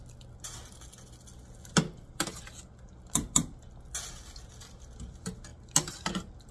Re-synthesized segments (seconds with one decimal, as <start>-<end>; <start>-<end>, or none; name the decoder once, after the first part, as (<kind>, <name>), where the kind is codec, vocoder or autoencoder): none